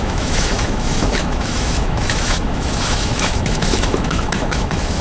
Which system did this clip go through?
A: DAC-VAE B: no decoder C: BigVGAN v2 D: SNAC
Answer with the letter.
A